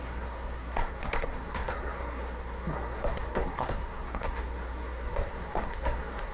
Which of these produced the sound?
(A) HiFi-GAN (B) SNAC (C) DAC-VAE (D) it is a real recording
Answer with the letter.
B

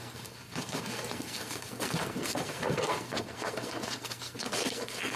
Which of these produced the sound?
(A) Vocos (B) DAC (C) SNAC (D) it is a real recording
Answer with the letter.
C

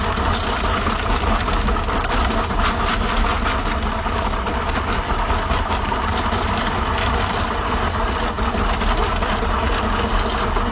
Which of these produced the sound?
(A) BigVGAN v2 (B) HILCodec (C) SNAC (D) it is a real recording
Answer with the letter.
D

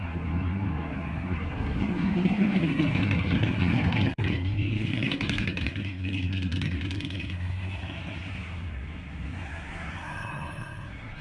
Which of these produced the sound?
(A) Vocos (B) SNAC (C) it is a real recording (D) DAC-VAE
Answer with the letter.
B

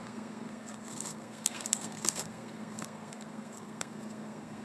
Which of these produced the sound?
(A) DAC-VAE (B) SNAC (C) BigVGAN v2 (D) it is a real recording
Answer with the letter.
B